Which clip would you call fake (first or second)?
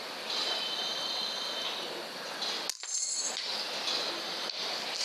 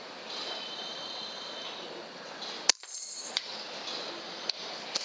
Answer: second